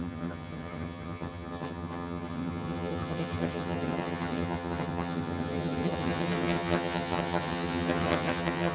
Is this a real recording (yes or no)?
no